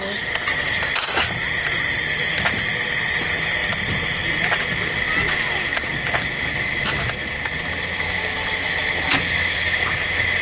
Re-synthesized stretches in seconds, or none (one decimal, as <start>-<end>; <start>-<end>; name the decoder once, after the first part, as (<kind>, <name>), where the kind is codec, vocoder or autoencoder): none

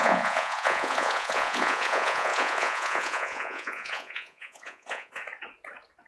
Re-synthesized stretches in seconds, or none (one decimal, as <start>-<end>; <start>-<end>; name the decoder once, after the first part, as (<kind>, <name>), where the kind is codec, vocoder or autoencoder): 0.0-5.2 (vocoder, Vocos)